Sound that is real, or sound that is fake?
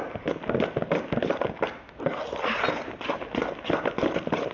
real